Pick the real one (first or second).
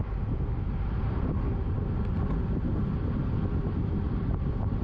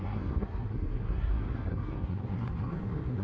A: first